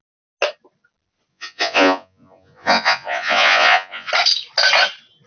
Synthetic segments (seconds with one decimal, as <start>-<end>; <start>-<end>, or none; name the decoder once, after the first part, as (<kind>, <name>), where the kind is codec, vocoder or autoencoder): 1.3-4.1 (vocoder, Vocos)